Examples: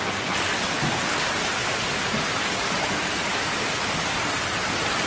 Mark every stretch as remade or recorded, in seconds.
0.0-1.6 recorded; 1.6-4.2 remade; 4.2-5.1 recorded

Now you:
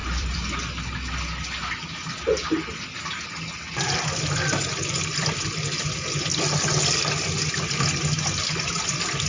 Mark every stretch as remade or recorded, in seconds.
0.0-1.2 remade; 1.2-9.3 recorded

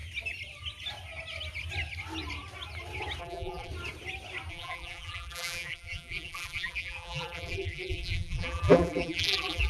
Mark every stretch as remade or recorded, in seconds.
0.0-3.2 recorded; 3.2-3.7 remade; 3.7-4.5 recorded; 4.5-9.7 remade

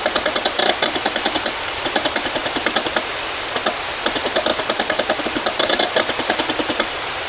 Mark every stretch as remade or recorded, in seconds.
0.0-2.4 remade; 2.4-3.8 recorded; 3.8-7.3 remade

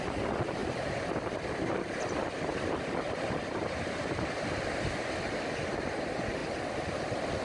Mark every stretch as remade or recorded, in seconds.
0.0-0.6 recorded; 0.6-5.0 remade; 5.0-7.4 recorded